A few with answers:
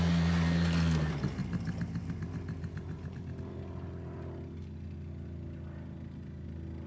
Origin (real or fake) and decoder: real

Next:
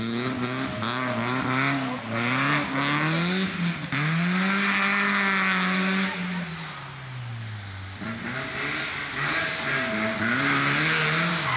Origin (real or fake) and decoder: real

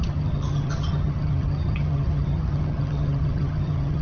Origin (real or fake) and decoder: fake, vocoder, HiFi-GAN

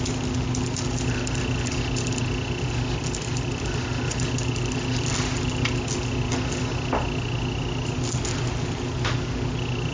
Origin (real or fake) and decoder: real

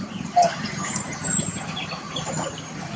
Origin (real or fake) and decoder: real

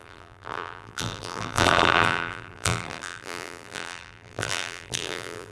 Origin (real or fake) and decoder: fake, vocoder, BigVGAN v2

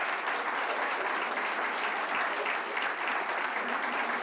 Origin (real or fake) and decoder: real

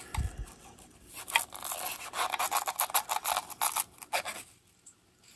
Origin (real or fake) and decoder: real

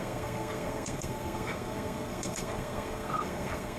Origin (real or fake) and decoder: fake, codec, SNAC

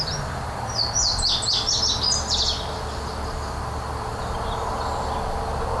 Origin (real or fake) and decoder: real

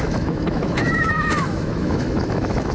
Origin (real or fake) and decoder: fake, autoencoder, DAC-VAE